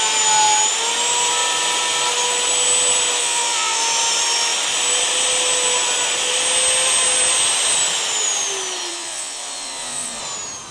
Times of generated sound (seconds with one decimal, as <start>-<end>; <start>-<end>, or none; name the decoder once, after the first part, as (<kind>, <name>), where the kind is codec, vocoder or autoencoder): 3.2-3.8 (vocoder, Vocos); 8.9-10.2

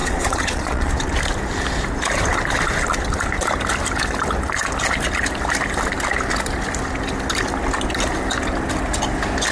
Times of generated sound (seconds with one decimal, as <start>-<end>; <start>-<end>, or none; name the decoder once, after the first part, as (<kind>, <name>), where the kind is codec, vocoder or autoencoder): 0.0-0.9 (vocoder, Vocos)

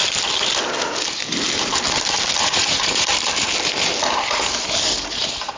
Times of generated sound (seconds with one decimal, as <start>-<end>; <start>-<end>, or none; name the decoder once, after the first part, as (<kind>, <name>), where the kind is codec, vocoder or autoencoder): 2.4-3.1 (vocoder, Vocos)

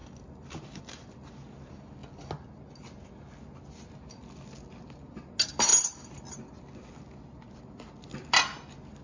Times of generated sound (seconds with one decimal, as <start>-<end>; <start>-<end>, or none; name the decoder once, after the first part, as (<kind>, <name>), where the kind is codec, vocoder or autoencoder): none

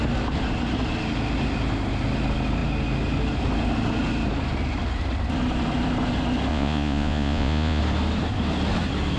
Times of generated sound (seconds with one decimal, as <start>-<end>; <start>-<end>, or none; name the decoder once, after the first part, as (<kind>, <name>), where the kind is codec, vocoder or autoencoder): 6.5-7.8 (vocoder, Vocos)